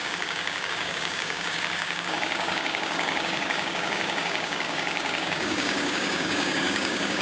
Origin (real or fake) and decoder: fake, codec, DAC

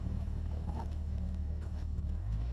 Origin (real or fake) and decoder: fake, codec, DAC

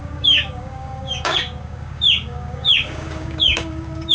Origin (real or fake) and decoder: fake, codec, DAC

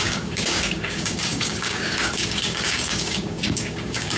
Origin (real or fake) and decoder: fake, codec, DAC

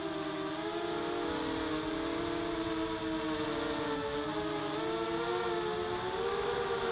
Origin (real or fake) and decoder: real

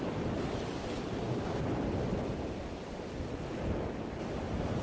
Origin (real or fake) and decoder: real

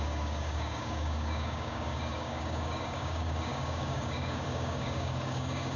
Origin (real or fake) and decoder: fake, codec, DAC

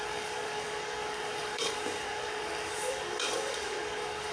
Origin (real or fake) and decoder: fake, codec, DAC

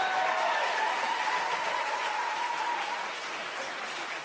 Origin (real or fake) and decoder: real